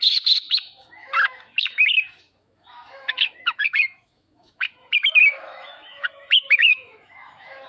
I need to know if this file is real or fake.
fake